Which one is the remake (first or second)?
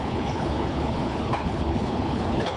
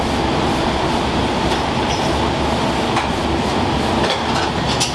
first